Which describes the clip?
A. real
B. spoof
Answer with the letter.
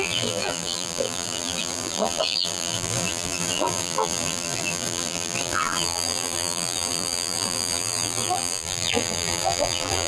B